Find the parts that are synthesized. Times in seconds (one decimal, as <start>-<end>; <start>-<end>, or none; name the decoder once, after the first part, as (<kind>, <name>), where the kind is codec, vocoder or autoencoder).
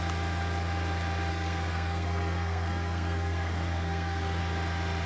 1.3-4.4 (codec, SNAC)